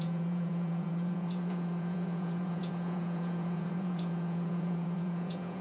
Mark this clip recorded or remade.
remade